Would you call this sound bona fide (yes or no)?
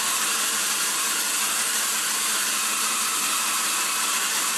yes